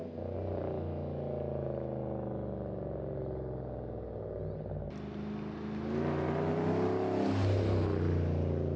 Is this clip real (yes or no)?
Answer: yes